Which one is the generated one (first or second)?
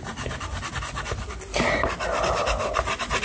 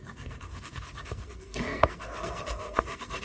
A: second